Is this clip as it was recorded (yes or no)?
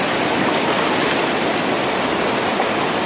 yes